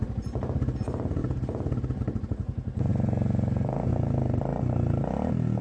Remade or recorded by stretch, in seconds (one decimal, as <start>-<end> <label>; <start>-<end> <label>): 0.0-5.6 recorded